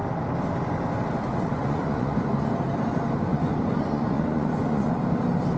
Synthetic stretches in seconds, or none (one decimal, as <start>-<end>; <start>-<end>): 1.5-2.5; 3.3-5.0